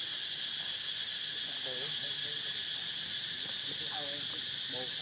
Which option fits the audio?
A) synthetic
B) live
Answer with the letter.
B